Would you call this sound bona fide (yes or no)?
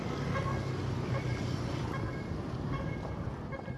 yes